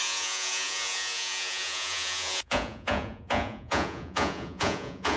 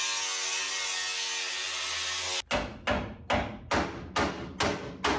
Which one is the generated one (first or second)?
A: first